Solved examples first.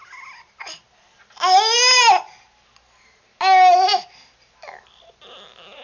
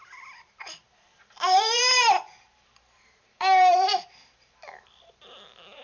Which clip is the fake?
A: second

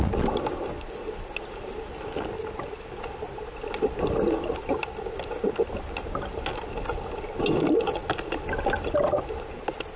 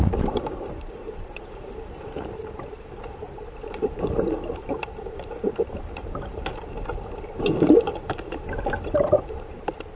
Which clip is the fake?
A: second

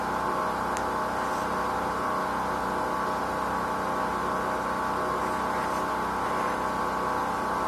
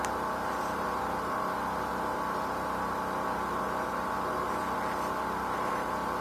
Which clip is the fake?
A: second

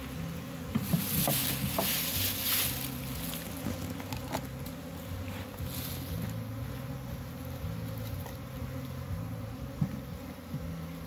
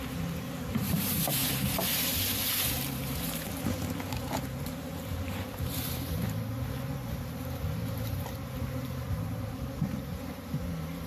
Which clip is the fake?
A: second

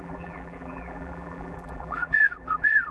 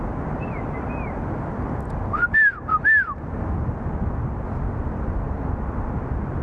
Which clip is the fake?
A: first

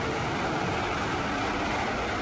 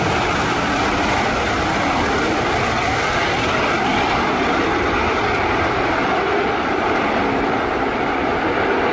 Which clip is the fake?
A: second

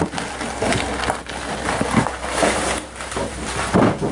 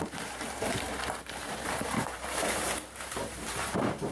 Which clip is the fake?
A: second